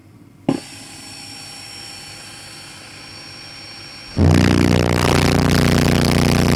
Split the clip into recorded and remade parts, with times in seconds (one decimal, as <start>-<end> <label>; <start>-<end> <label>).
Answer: 0.0-6.6 recorded